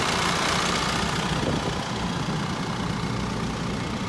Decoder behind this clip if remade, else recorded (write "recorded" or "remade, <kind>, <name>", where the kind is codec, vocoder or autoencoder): recorded